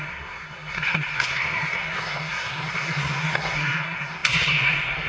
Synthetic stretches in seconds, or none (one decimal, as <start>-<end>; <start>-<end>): 0.0-5.1